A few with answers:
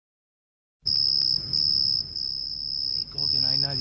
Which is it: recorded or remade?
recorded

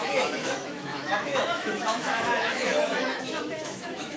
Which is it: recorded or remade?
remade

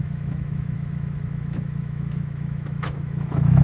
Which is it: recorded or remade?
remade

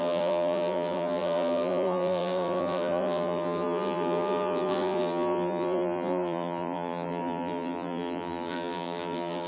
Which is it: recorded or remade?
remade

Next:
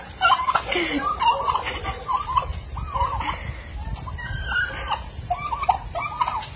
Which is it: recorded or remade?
recorded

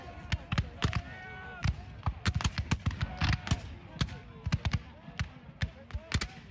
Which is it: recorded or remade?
recorded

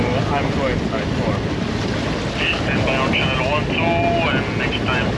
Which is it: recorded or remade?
recorded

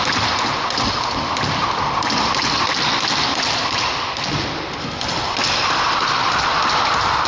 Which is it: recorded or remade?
recorded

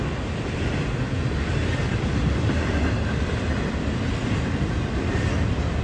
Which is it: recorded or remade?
recorded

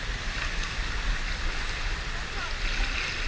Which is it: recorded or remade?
recorded